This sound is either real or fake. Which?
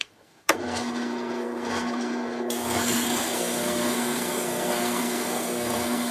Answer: fake